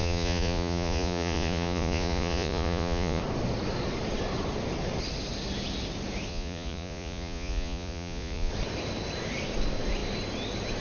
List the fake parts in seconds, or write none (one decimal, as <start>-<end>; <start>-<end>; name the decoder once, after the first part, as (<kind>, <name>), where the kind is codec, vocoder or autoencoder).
0.0-3.2 (vocoder, Vocos); 6.3-8.5